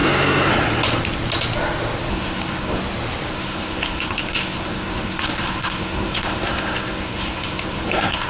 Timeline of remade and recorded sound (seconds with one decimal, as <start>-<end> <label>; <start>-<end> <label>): 0.0-0.5 remade; 0.5-2.1 recorded; 2.1-2.8 remade; 2.8-3.3 recorded; 3.3-8.3 remade